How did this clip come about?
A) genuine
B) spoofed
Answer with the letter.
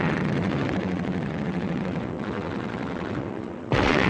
B